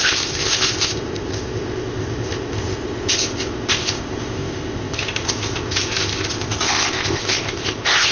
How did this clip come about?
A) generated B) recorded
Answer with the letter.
A